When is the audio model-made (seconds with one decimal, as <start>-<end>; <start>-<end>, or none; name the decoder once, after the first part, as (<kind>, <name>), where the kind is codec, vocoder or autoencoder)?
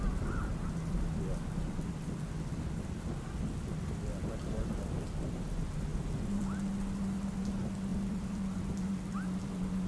0.5-2.0 (vocoder, BigVGAN v2); 7.9-8.4